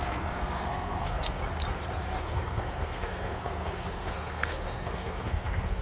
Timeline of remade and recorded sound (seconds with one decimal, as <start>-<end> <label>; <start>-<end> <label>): 0.0-1.4 remade; 1.4-2.2 recorded; 2.2-5.8 remade